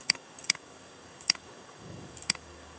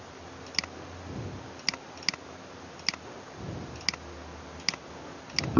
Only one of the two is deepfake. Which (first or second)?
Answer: first